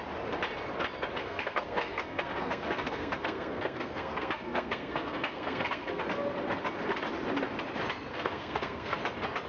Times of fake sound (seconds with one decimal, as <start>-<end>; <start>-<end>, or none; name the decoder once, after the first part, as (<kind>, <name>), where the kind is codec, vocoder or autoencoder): 1.2-6.0 (codec, SNAC); 8.1-9.0

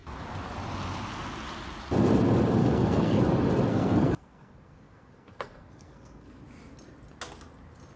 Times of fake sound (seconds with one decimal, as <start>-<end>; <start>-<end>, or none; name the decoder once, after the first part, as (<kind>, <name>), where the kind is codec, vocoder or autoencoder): 2.6-3.2 (codec, SNAC); 3.7-6.4